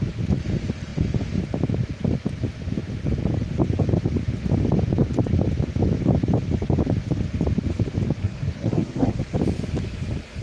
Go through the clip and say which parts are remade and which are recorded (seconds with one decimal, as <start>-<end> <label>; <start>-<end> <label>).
0.0-8.2 recorded; 8.2-9.2 remade; 9.2-10.4 recorded